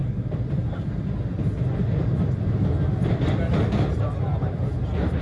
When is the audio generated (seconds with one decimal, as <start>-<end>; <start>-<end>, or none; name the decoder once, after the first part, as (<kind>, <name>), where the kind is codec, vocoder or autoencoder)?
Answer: none